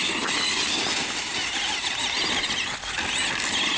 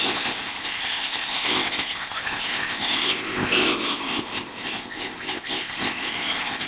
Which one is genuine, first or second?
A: first